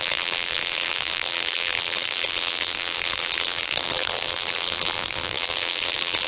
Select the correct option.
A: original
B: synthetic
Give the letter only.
B